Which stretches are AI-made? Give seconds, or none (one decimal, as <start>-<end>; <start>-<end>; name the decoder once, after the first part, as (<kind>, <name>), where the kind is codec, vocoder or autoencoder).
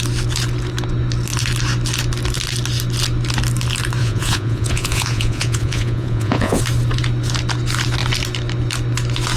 4.0-6.6 (vocoder, Vocos)